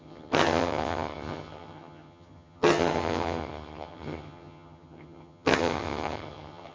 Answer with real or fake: fake